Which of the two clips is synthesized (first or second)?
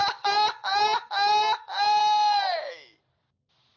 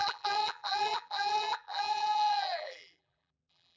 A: second